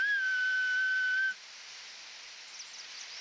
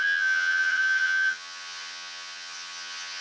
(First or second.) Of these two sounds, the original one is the first